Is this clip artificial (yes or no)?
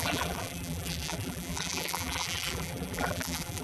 yes